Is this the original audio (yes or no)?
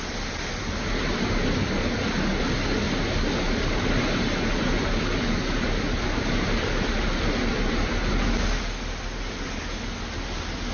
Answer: yes